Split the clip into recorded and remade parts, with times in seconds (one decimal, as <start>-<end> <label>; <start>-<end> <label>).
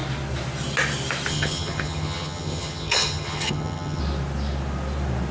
0.0-1.3 recorded; 1.3-4.0 remade; 4.0-5.3 recorded